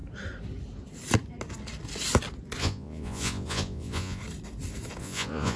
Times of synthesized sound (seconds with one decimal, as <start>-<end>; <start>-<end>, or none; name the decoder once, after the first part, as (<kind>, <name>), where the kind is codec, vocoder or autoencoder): 2.6-4.2 (vocoder, Vocos); 5.0-5.6